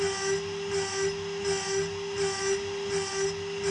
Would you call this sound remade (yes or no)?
no